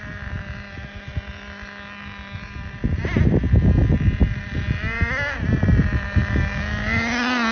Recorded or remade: recorded